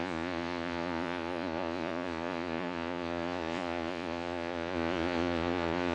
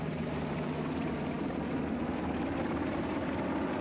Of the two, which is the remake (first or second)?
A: first